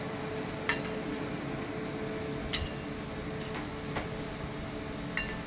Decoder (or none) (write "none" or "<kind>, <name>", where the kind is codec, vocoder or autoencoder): none